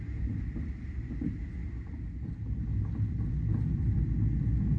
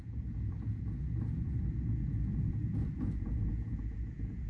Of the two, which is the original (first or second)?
first